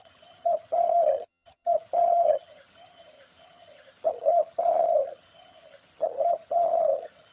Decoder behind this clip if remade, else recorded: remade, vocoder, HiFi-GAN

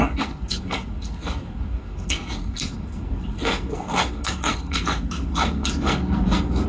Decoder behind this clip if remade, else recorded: remade, codec, SNAC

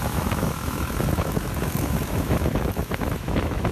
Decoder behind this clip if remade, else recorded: remade, autoencoder, DAC-VAE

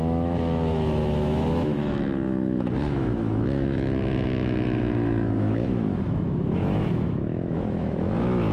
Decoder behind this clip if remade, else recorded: remade, autoencoder, DAC-VAE